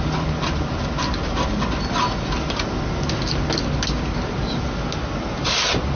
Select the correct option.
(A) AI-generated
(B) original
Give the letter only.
B